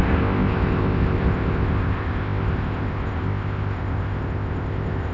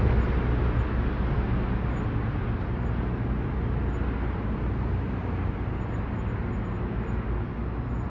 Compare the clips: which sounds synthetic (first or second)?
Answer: first